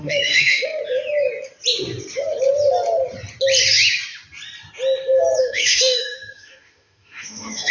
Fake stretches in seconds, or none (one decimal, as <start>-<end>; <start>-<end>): 0.0-0.8; 5.4-7.7